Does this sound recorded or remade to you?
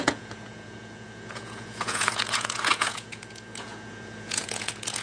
remade